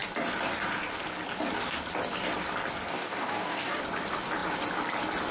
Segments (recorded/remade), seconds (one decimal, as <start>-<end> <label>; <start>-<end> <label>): 0.0-2.9 recorded; 2.9-3.8 remade; 3.8-5.3 recorded